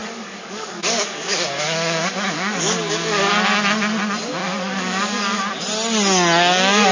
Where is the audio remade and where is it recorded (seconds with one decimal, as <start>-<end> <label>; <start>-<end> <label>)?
0.0-3.3 remade; 3.3-4.4 recorded; 4.4-5.5 remade; 5.5-6.9 recorded